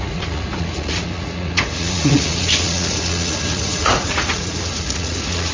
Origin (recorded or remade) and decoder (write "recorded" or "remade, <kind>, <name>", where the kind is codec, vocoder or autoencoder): remade, vocoder, Vocos